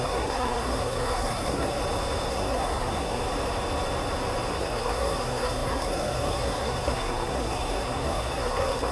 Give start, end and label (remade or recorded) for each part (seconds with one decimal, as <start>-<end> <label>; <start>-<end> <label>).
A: 0.0-1.8 remade; 1.8-2.3 recorded; 2.3-3.2 remade; 3.2-4.5 recorded; 4.5-8.9 remade